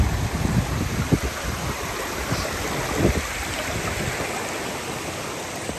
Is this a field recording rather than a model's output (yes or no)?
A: yes